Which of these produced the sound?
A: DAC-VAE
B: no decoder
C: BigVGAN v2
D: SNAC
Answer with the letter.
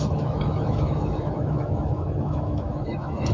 A